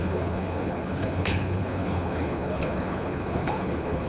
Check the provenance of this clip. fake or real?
fake